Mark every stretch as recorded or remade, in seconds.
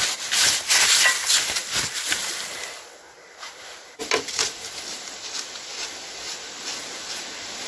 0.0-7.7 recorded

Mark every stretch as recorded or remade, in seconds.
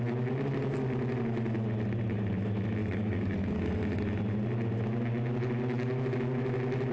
0.0-2.8 recorded; 2.8-3.7 remade; 3.7-6.9 recorded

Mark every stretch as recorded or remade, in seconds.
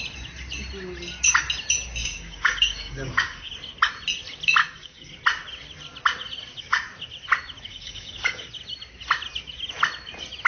0.0-2.0 recorded; 2.0-3.5 remade; 3.5-4.6 recorded; 4.6-5.1 remade; 5.1-7.7 recorded; 7.7-8.5 remade; 8.5-10.5 recorded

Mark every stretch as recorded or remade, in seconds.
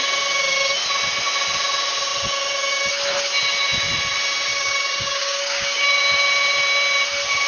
0.0-4.5 recorded; 4.5-6.0 remade; 6.0-7.5 recorded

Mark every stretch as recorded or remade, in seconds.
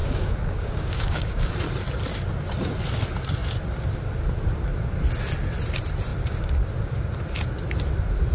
0.0-1.5 remade; 1.5-8.3 recorded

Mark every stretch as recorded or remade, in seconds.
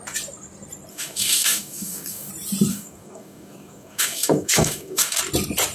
0.0-0.9 recorded; 0.9-2.3 remade; 2.3-2.7 recorded; 2.7-5.2 remade; 5.2-5.7 recorded